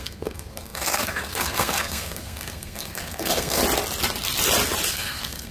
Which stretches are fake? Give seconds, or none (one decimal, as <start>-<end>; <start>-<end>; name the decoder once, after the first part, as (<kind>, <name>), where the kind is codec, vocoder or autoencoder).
0.0-3.6 (codec, SNAC); 4.9-5.5